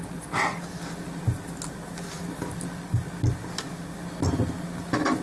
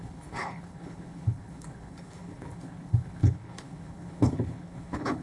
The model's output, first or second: second